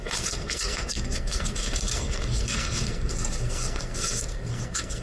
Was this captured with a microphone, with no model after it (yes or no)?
no